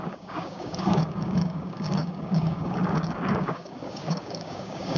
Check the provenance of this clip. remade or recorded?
remade